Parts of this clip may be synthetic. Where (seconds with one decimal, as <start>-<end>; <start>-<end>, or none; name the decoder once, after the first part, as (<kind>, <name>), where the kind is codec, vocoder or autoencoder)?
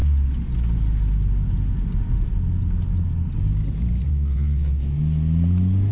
4.1-4.8 (vocoder, WaveNeXt)